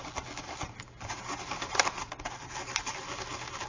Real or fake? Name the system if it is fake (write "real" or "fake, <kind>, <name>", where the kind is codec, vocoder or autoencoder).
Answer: real